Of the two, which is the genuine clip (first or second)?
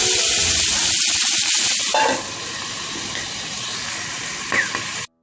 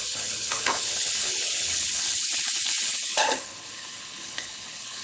first